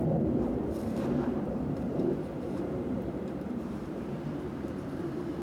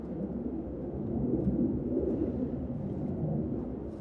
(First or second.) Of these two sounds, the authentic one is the second